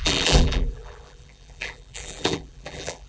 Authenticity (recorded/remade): remade